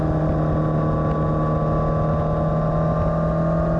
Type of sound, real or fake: real